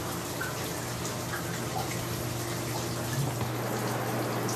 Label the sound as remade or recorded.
recorded